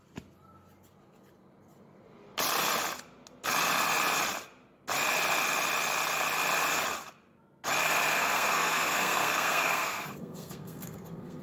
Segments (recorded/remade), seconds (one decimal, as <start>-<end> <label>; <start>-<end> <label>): 0.0-8.1 recorded; 8.1-11.4 remade